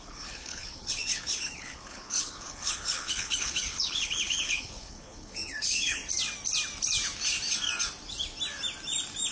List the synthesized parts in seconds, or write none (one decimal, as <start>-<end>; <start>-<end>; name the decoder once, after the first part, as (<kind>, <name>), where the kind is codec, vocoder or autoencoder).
0.0-6.0 (codec, HILCodec)